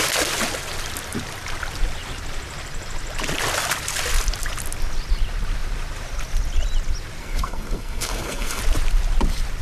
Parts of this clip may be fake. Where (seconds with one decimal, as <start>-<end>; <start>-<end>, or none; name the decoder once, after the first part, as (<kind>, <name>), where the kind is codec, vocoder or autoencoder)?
7.2-8.6 (codec, SNAC)